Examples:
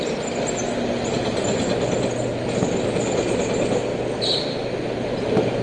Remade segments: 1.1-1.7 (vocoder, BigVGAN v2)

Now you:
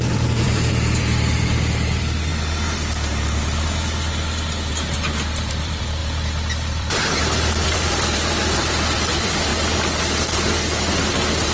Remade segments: 0.0-2.3 (vocoder, BigVGAN v2); 4.7-9.5

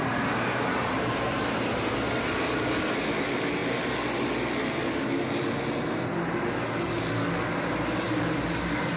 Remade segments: 0.0-2.1 (vocoder, BigVGAN v2)